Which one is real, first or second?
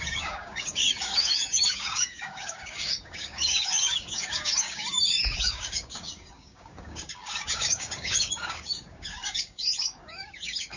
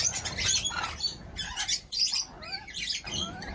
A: second